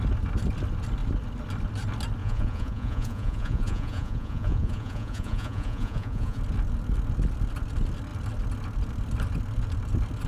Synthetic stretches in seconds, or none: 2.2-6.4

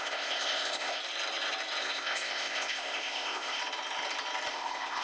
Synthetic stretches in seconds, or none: 0.0-1.0; 1.8-3.6; 4.5-5.0